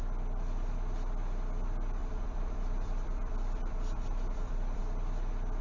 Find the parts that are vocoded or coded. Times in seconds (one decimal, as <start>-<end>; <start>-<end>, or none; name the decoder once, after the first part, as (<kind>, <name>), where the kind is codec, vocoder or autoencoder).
2.0-4.8 (vocoder, BigVGAN v2)